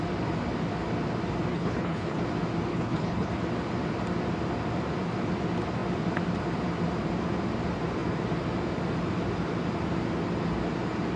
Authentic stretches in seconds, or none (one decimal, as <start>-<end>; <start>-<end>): 0.0-1.5; 2.2-2.7; 3.3-11.2